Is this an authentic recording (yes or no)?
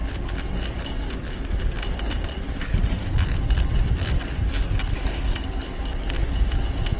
yes